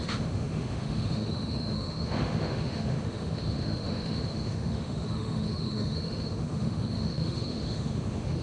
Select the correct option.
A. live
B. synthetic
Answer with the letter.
B